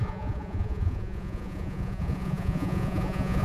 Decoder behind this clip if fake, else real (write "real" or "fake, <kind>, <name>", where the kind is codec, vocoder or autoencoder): fake, vocoder, Vocos